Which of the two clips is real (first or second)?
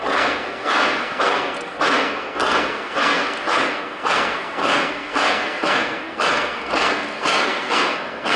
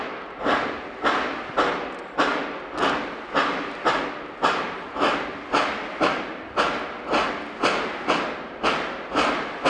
second